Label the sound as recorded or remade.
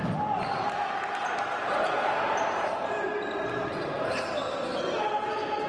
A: recorded